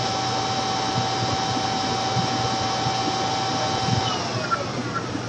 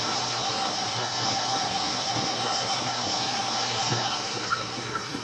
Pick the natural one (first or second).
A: first